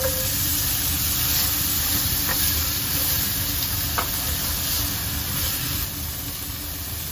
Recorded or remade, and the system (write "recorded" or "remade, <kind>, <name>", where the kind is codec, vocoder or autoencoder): recorded